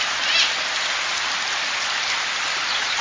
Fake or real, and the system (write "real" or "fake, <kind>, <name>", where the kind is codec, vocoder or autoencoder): real